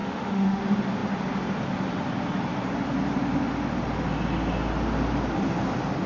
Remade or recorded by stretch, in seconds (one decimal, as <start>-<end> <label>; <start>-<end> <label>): 0.0-0.6 remade; 0.6-6.1 recorded